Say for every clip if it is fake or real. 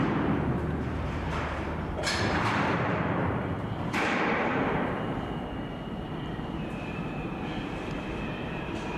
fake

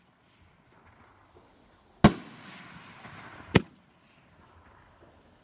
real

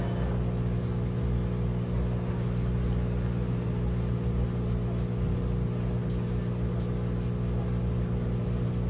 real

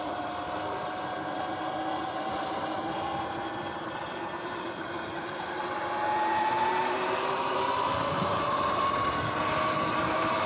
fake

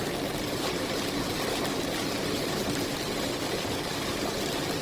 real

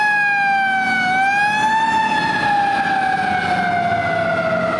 real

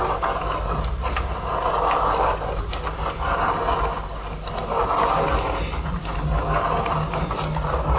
real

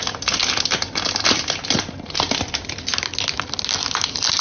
real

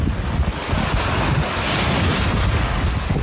real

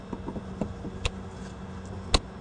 real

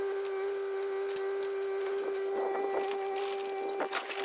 real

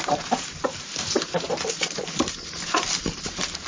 fake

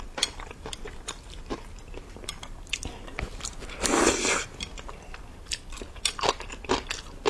fake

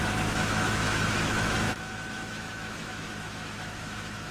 fake